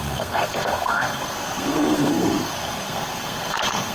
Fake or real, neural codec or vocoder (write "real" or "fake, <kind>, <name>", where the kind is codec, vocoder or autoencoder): fake, codec, SNAC